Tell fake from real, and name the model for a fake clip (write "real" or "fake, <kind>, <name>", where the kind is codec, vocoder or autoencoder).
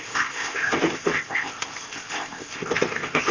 fake, codec, ZipCodec